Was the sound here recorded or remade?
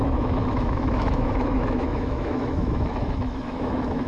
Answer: remade